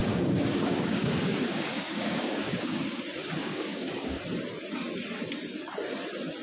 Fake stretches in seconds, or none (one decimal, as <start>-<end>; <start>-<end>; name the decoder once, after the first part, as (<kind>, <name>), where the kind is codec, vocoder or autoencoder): 0.0-3.0 (codec, DAC); 3.4-4.2